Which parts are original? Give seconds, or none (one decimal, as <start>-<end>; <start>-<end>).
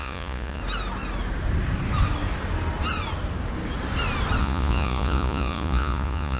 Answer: 0.6-4.4